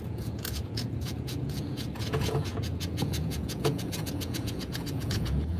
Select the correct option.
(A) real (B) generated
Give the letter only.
B